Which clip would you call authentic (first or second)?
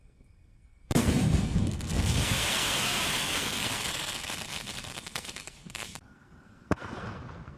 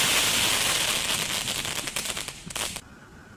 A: second